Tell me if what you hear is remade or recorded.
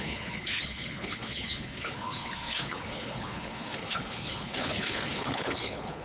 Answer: remade